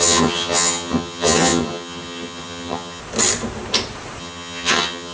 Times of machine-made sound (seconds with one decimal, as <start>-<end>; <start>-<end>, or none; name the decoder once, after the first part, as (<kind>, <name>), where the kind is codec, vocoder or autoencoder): 0.0-3.0 (vocoder, HiFi-GAN); 4.2-5.1